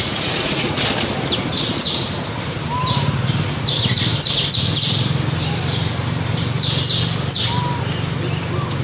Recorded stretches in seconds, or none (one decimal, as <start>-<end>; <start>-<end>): 0.8-8.8